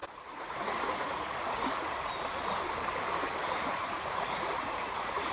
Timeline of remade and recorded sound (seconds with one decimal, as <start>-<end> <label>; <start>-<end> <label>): 0.0-2.1 remade; 2.1-3.7 recorded; 3.7-5.3 remade